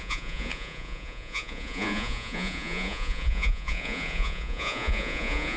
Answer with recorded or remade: remade